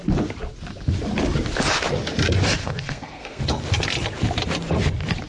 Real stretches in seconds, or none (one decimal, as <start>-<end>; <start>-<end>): 0.0-2.6; 3.4-5.3